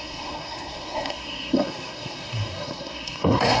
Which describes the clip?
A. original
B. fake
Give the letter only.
B